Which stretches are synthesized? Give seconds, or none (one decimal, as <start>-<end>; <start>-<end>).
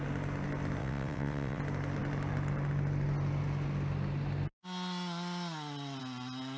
0.8-1.6